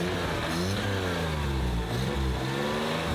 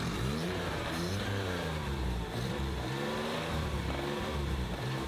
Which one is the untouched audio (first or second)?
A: first